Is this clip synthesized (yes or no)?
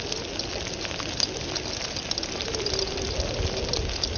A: no